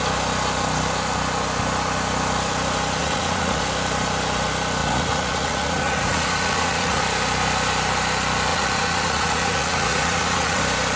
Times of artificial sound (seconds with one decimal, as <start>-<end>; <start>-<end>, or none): 3.0-3.6; 4.8-7.0; 8.5-10.6